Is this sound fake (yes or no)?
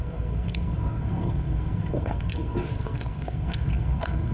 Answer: yes